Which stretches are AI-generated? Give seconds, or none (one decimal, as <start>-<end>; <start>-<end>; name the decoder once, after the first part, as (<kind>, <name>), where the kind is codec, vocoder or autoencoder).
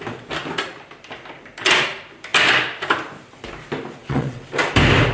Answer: 4.0-4.5 (vocoder, WaveNeXt)